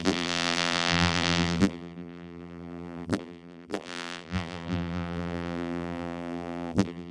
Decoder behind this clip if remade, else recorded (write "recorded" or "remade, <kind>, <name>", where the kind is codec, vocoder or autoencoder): remade, vocoder, BigVGAN v2